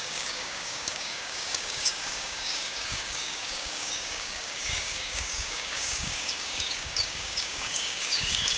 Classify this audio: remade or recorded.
remade